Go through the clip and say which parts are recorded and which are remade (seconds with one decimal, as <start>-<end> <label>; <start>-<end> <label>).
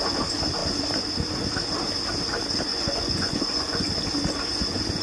0.0-2.7 recorded; 2.7-3.9 remade; 3.9-5.0 recorded